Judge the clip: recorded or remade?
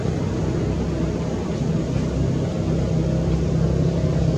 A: recorded